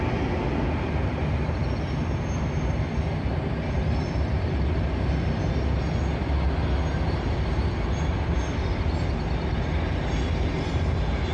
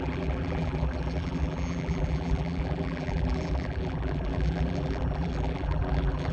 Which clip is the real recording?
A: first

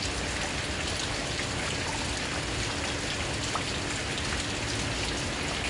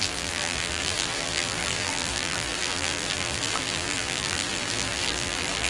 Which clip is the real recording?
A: first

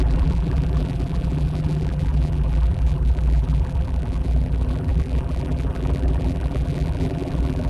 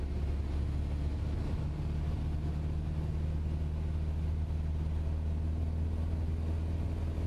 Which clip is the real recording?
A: second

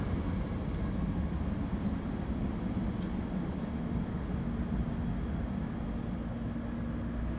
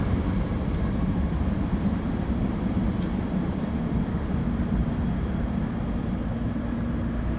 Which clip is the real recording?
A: first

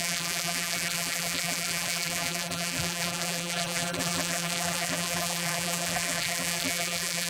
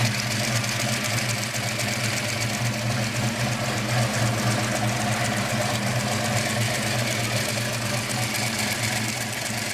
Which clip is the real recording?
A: second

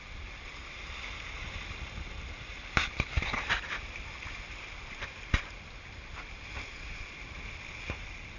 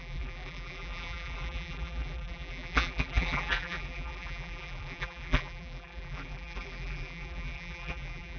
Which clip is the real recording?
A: first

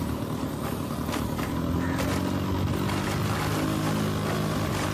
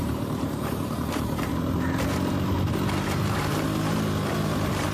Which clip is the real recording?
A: first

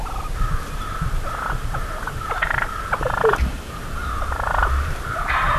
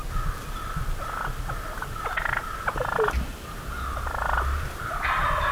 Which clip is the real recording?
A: second